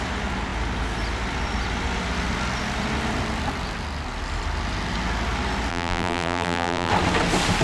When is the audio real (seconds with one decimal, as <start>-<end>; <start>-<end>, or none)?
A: 0.0-5.7; 6.9-7.6